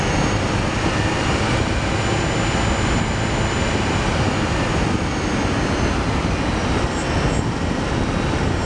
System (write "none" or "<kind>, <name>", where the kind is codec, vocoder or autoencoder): none